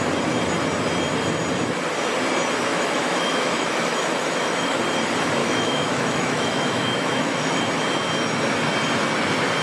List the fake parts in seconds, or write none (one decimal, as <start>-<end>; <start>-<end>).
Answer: 2.7-4.8; 5.4-7.6